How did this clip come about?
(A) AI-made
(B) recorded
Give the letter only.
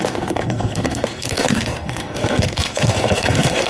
A